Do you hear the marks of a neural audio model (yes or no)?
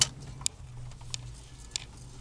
no